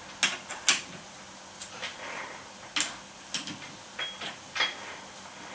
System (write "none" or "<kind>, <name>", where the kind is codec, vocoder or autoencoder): none